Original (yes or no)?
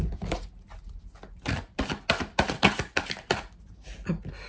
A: yes